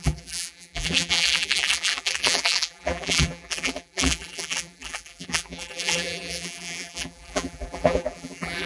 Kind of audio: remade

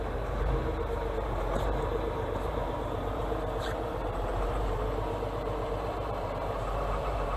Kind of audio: remade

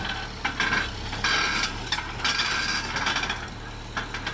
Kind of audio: recorded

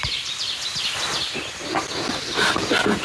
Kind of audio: remade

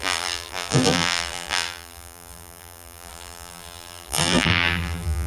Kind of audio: remade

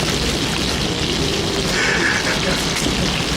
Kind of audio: recorded